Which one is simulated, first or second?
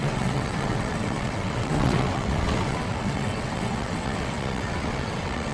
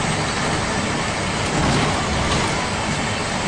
first